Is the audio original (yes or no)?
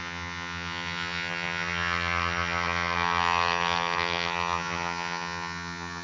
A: no